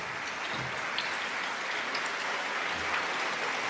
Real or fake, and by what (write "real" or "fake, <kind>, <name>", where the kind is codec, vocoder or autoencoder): real